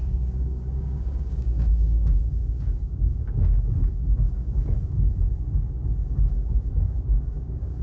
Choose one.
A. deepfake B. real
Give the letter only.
A